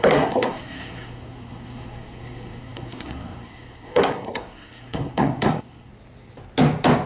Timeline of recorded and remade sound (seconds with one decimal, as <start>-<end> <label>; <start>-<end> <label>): 0.0-5.9 remade; 5.9-7.1 recorded